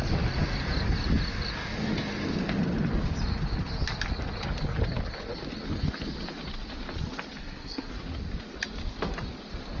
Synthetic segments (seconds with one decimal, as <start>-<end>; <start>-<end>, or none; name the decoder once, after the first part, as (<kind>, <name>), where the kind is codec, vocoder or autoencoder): 7.4-7.9 (codec, SNAC)